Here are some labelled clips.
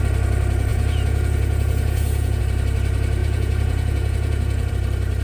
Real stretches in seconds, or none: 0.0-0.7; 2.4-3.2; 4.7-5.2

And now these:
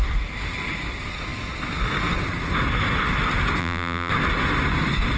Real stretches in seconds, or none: 0.0-3.6; 4.1-5.2